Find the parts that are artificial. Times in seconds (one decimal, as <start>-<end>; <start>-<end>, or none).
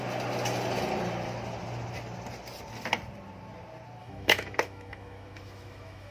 4.0-6.1